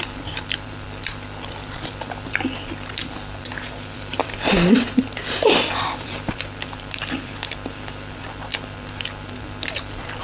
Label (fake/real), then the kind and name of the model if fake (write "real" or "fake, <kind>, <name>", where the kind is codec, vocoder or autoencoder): fake, vocoder, BigVGAN v2